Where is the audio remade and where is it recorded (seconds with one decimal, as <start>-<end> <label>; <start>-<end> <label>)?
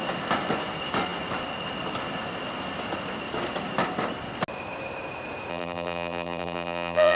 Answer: 0.0-5.5 recorded; 5.5-7.2 remade